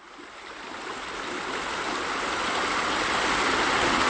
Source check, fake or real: real